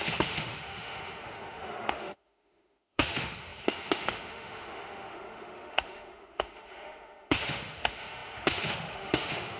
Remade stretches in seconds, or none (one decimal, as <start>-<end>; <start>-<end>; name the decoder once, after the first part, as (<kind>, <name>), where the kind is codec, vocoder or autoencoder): 0.0-9.6 (autoencoder, DAC-VAE)